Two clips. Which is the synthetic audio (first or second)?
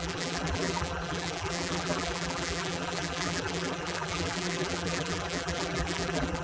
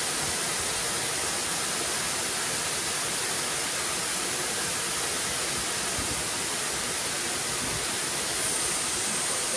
first